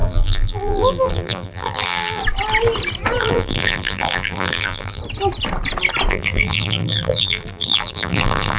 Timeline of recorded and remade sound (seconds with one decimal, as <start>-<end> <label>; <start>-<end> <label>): 0.0-2.2 remade; 2.2-3.2 recorded; 3.2-5.0 remade; 5.0-6.1 recorded; 6.1-8.6 remade